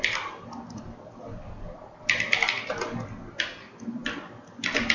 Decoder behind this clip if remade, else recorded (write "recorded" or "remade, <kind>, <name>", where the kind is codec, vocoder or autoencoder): recorded